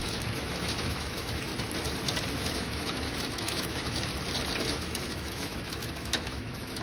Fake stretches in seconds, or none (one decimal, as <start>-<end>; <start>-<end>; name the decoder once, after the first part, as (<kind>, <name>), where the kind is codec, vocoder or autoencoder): 0.0-1.5 (autoencoder, DAC-VAE); 2.3-4.1; 4.6-6.8

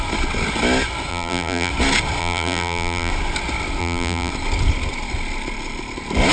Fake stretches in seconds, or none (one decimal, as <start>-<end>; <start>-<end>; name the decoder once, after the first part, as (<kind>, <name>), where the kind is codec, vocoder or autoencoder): 1.1-1.7 (vocoder, BigVGAN v2); 2.2-3.1; 3.8-4.3

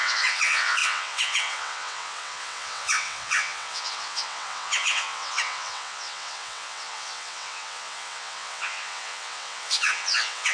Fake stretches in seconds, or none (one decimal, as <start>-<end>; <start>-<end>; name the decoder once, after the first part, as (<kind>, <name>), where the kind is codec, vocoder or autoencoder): 0.0-10.5 (vocoder, WaveNeXt)

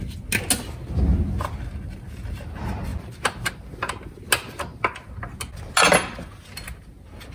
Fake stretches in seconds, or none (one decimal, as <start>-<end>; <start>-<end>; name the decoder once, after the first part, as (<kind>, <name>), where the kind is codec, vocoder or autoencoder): none